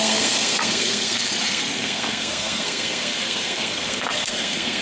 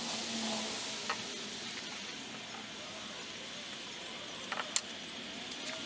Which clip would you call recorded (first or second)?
second